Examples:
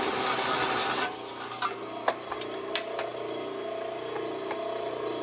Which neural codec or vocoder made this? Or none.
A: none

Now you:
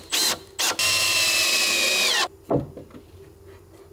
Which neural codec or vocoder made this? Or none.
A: none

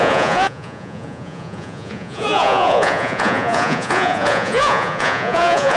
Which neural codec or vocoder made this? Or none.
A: vocoder, Vocos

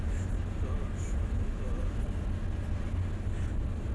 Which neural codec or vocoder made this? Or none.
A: none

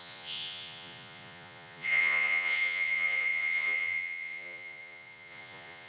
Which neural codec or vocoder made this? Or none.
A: vocoder, Vocos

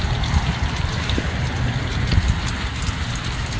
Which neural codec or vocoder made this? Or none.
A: none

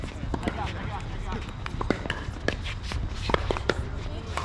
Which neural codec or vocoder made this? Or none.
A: none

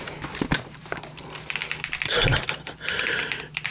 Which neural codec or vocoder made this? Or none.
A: none